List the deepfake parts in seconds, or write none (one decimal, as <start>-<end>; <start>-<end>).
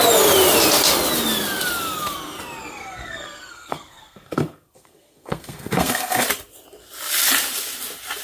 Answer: 2.7-6.2